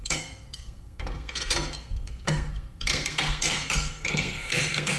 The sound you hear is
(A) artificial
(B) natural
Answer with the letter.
A